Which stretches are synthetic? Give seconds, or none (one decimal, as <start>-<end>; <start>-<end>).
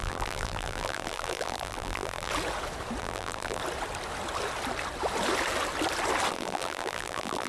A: 0.0-2.3; 3.0-3.6; 6.3-7.5